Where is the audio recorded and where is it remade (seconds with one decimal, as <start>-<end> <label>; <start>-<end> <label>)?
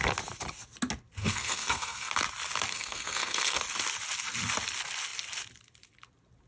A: 0.0-1.2 recorded; 1.2-2.1 remade; 2.1-2.7 recorded; 2.7-3.6 remade; 3.6-6.5 recorded